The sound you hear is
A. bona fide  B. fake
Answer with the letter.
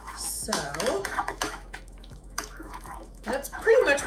B